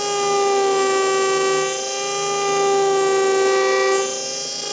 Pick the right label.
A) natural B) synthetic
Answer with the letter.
A